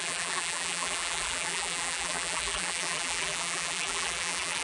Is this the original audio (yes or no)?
no